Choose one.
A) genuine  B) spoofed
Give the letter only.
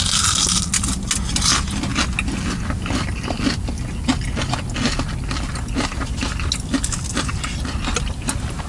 A